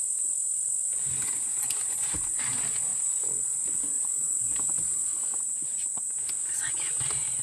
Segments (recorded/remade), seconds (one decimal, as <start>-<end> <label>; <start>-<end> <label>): 0.0-7.4 recorded